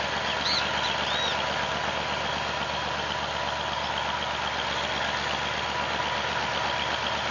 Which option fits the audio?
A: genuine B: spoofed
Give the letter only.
A